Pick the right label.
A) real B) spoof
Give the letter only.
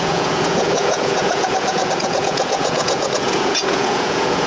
B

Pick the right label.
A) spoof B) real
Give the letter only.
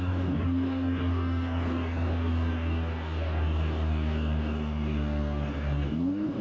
A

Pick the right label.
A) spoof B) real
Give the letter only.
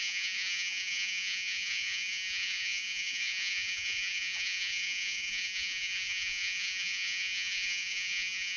A